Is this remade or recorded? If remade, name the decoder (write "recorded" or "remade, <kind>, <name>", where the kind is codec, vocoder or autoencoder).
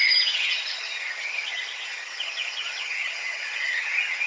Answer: remade, vocoder, HiFi-GAN